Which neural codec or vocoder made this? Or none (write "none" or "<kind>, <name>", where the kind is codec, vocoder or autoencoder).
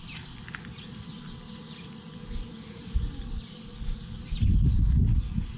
none